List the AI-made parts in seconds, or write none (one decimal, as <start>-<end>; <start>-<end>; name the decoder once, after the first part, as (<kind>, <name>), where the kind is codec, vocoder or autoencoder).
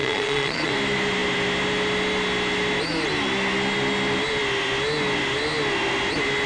0.0-0.7 (vocoder, Vocos)